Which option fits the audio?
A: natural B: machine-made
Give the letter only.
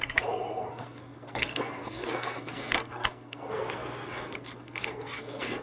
B